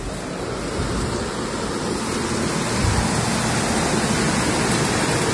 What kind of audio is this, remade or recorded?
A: recorded